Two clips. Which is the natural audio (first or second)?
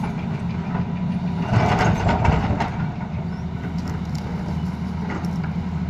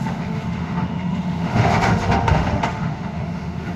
first